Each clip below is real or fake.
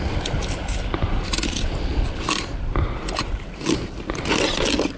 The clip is real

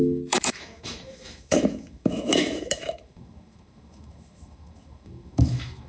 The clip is fake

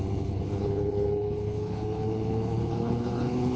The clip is fake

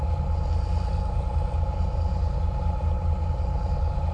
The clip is real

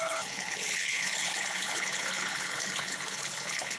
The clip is fake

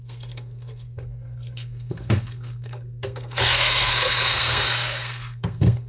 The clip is fake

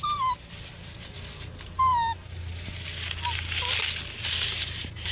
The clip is real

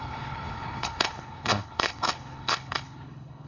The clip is fake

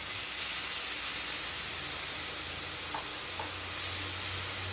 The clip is real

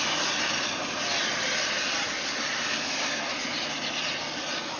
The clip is real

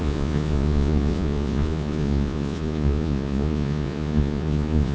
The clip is fake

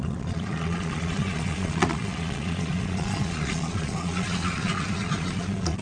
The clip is fake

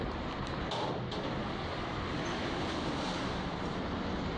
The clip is real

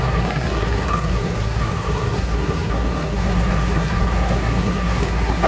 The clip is fake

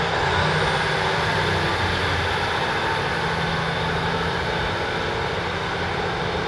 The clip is real